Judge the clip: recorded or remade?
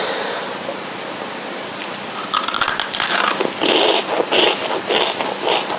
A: recorded